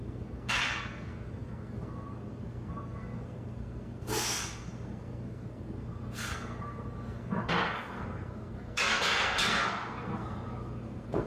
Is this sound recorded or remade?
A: remade